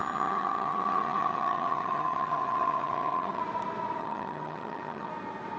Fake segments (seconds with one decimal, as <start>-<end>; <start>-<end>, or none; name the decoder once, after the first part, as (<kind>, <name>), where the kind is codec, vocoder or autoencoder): 0.0-3.4 (vocoder, HiFi-GAN); 4.0-5.1